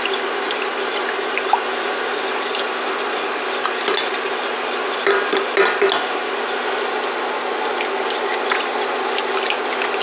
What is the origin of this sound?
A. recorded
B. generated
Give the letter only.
A